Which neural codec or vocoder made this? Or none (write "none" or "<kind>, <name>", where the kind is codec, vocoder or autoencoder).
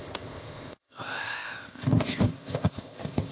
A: codec, ZipCodec